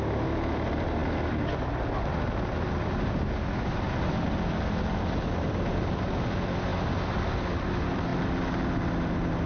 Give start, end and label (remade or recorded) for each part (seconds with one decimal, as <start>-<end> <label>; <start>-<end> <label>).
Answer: 0.0-9.5 recorded